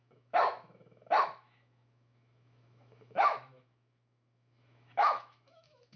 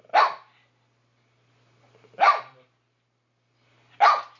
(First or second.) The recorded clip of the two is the second